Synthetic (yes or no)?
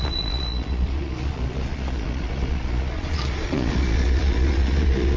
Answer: yes